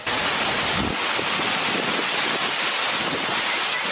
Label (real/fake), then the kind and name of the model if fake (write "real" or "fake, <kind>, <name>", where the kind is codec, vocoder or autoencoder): real